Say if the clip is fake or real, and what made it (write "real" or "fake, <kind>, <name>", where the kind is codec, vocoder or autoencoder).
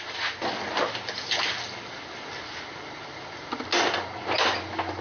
real